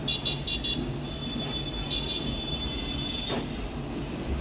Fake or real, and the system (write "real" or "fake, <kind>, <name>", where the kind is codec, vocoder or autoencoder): real